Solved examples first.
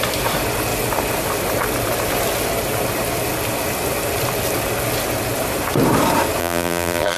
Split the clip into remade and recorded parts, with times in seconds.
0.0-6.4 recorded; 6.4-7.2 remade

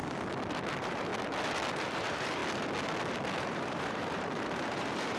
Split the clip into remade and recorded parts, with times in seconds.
0.0-0.7 recorded; 0.7-1.1 remade; 1.1-1.7 recorded; 1.7-2.4 remade; 2.4-3.4 recorded; 3.4-5.2 remade

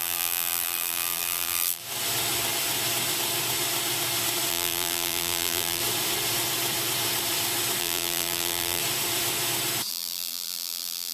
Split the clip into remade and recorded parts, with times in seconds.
0.0-1.8 remade; 1.8-4.5 recorded; 4.5-5.8 remade; 5.8-7.8 recorded; 7.8-8.8 remade; 8.8-9.9 recorded; 9.9-11.1 remade

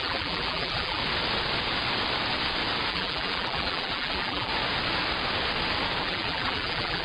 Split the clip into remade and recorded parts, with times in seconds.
0.0-1.0 remade; 1.0-2.9 recorded; 2.9-4.5 remade; 4.5-6.0 recorded; 6.0-7.0 remade

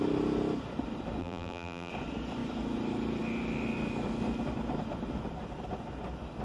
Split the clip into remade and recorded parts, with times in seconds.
0.0-1.2 recorded; 1.2-1.9 remade; 1.9-6.4 recorded

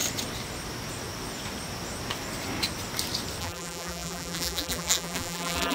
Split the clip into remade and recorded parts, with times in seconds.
0.0-3.4 recorded; 3.4-5.7 remade